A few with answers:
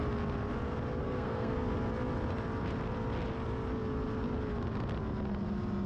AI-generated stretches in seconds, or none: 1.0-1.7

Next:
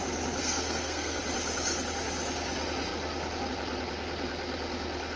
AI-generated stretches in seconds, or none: 0.4-1.2

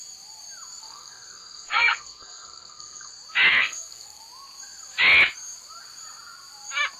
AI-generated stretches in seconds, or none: 0.8-3.1; 3.5-4.2